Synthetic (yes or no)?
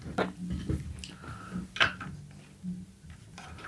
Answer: no